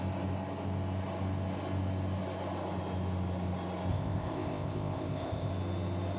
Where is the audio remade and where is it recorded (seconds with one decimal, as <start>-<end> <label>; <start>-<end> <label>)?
0.0-3.9 recorded; 3.9-5.5 remade; 5.5-6.2 recorded